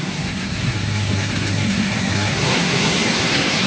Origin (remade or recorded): remade